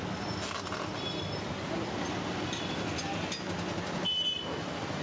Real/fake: real